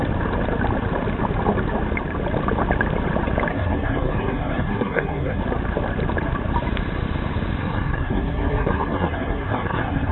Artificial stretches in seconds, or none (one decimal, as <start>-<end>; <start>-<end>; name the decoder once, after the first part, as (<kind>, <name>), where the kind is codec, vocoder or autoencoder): 3.5-5.4 (codec, SNAC); 7.6-10.1

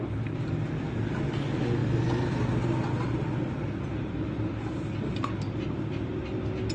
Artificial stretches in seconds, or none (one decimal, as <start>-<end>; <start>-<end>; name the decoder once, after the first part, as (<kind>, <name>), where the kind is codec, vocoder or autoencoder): none

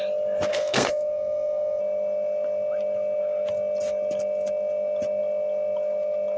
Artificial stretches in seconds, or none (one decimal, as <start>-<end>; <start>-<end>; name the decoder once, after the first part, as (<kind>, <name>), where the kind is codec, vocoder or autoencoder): 0.5-1.8 (codec, SNAC)

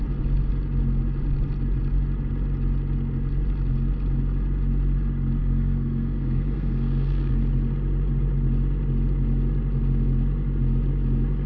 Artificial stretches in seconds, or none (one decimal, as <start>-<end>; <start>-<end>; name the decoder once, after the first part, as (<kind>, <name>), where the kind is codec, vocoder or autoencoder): 5.4-7.3 (codec, SNAC)

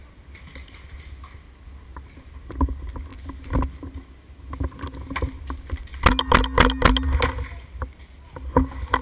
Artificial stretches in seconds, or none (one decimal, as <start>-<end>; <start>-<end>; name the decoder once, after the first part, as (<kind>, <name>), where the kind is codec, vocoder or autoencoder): none